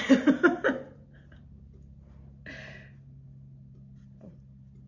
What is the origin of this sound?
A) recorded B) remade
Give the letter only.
A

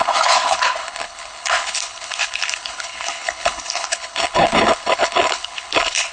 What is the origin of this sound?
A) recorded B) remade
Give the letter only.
B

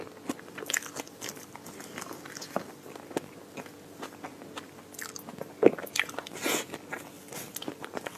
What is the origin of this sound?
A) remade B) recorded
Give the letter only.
B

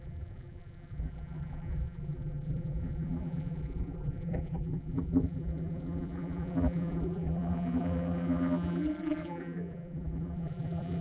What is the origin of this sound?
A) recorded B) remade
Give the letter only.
B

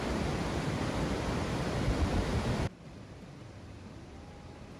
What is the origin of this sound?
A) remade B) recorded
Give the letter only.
A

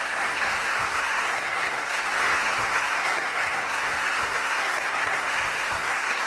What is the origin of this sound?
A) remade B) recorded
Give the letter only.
A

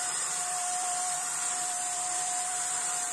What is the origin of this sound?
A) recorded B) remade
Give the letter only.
B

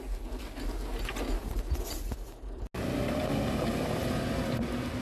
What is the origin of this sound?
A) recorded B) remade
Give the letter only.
A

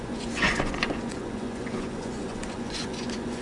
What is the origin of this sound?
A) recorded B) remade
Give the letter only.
B